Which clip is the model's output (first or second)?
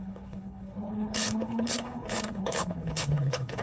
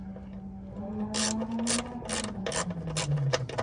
first